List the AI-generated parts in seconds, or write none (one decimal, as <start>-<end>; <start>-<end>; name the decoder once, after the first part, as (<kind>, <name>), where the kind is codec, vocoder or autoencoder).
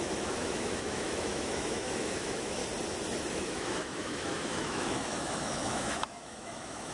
0.0-2.6 (autoencoder, DAC-VAE); 3.3-6.9